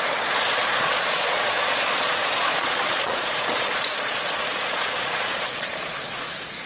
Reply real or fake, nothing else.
fake